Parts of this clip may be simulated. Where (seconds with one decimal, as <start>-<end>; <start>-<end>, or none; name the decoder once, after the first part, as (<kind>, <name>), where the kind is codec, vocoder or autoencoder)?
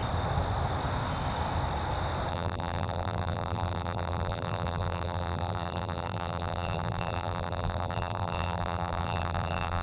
2.3-9.8 (vocoder, BigVGAN v2)